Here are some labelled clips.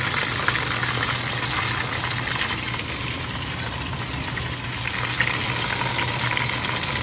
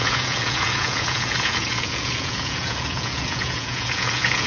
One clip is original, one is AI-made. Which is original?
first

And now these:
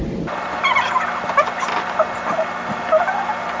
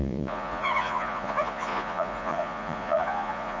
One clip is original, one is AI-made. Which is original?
first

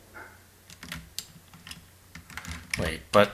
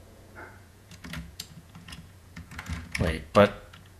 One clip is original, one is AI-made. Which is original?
first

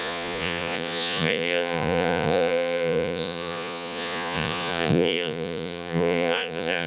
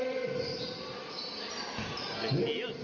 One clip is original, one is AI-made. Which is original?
second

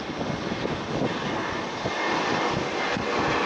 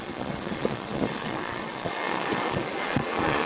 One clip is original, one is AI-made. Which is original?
first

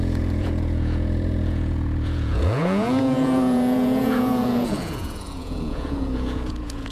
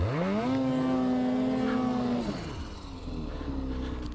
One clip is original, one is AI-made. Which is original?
second